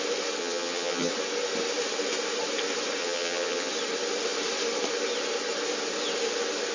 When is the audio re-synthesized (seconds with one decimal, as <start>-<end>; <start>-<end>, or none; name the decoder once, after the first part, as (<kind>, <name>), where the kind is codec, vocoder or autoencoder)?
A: 0.4-1.1 (vocoder, HiFi-GAN); 3.0-3.7